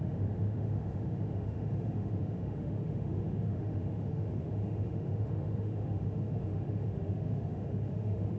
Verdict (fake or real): fake